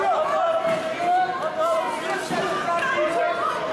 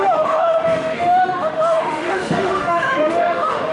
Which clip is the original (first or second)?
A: first